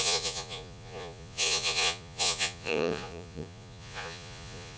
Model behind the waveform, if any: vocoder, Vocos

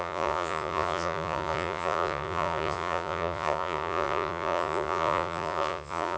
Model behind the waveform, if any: vocoder, Vocos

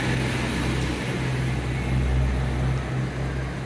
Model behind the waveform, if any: none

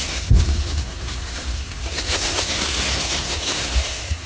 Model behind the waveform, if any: codec, SNAC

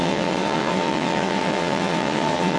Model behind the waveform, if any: vocoder, WaveNeXt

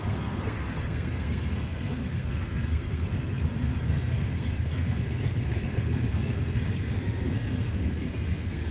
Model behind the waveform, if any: codec, SNAC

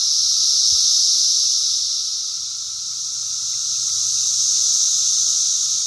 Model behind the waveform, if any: none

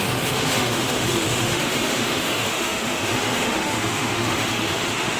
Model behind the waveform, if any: autoencoder, DAC-VAE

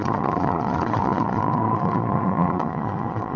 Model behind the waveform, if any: vocoder, Vocos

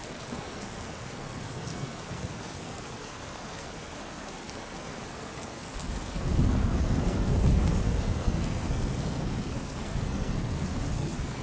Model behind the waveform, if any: codec, SNAC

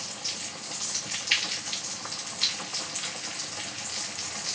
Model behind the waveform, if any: none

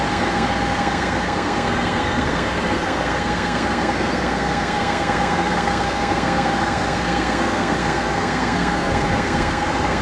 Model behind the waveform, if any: codec, SNAC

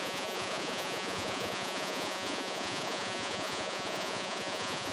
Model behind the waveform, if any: vocoder, Vocos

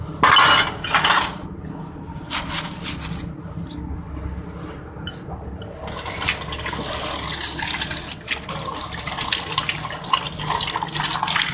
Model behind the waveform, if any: none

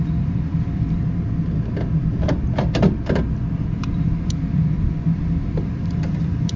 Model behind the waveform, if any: vocoder, BigVGAN v2